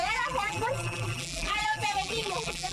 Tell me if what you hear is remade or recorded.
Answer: remade